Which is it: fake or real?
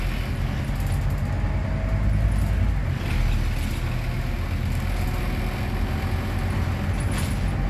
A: real